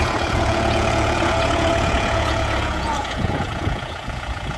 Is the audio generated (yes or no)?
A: yes